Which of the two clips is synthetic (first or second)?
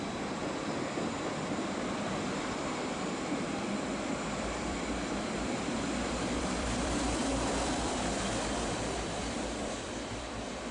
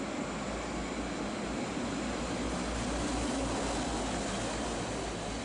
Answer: first